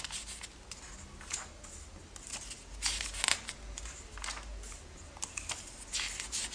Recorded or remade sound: recorded